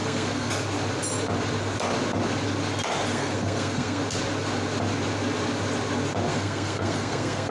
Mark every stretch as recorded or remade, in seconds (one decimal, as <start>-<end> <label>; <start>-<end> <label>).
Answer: 0.0-0.5 remade; 0.5-3.1 recorded; 3.1-4.0 remade; 4.0-6.3 recorded; 6.3-7.5 remade